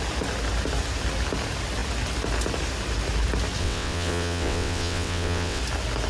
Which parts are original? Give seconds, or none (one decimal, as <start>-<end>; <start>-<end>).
0.0-3.6; 5.6-6.1